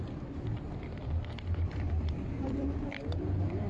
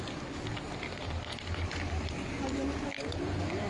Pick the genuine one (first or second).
second